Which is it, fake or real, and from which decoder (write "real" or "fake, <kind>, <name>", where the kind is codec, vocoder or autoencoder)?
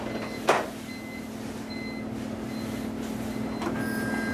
real